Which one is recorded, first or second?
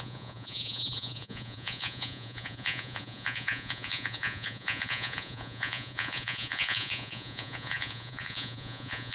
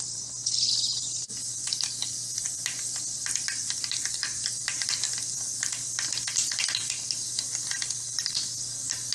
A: second